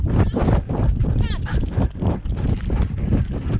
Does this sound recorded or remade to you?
recorded